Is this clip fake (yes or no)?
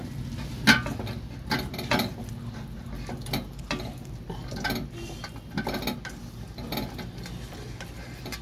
no